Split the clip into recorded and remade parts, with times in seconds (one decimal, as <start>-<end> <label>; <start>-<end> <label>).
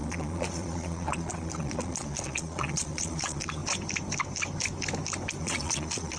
0.0-3.6 remade; 3.6-5.4 recorded; 5.4-6.2 remade